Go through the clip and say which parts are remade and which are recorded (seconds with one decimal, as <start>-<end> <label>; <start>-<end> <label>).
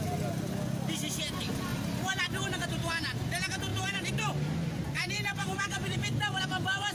0.0-1.7 recorded; 1.7-2.2 remade; 2.2-3.7 recorded; 3.7-6.4 remade; 6.4-6.9 recorded